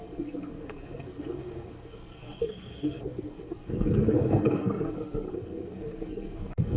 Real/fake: fake